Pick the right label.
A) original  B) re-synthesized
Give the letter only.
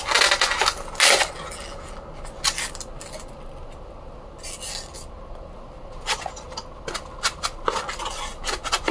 A